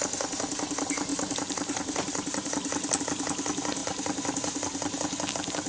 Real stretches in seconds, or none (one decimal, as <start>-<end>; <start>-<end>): 0.0-1.1; 3.0-5.7